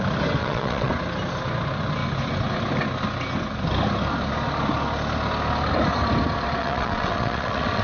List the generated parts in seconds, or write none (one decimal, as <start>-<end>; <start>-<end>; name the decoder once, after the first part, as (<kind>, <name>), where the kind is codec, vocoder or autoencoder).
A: 0.4-0.9 (vocoder, WaveNeXt); 6.6-7.8